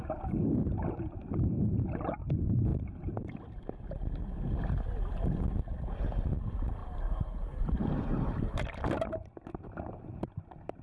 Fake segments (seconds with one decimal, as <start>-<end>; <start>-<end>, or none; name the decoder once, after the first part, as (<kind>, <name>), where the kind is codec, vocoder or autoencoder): none